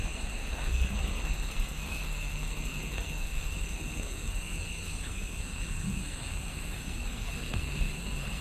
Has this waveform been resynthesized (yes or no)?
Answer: yes